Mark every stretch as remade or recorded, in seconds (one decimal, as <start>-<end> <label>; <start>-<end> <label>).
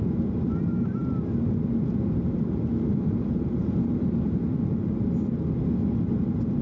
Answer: 0.0-6.6 recorded